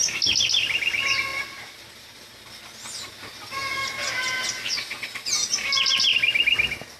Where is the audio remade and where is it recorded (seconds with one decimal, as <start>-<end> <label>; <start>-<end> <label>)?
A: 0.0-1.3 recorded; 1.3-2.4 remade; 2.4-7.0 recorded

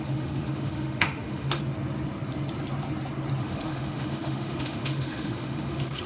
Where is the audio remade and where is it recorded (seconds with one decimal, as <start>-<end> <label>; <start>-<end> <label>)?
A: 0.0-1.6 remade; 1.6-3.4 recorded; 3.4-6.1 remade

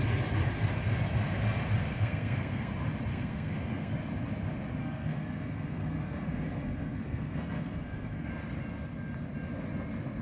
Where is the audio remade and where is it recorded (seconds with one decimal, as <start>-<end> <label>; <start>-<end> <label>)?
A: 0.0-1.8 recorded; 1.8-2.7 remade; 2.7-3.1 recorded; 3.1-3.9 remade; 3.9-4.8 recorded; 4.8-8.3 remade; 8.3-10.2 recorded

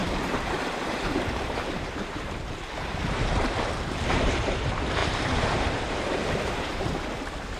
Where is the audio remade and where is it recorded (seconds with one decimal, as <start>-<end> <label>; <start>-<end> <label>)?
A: 0.0-4.6 remade; 4.6-5.0 recorded; 5.0-7.1 remade; 7.1-7.6 recorded

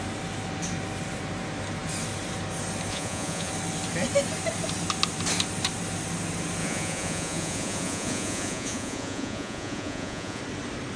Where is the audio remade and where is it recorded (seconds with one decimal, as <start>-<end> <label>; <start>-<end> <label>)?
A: 0.0-2.9 recorded; 2.9-3.5 remade; 3.5-6.6 recorded; 6.6-10.4 remade; 10.4-11.0 recorded

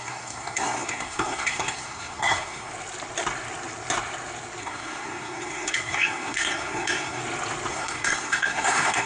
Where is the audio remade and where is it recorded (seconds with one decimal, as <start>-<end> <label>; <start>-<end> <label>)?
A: 0.0-2.7 remade; 2.7-4.6 recorded; 4.6-7.2 remade; 7.2-7.7 recorded; 7.7-9.1 remade